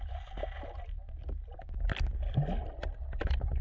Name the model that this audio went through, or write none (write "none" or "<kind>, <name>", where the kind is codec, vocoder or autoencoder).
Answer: none